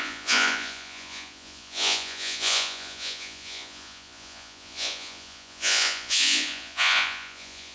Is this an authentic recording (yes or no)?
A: no